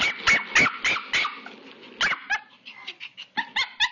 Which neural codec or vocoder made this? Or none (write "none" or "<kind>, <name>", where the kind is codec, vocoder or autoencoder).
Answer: none